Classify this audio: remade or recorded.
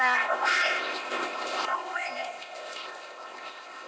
remade